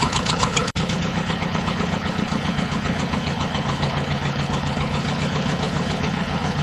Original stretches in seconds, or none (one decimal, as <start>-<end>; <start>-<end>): none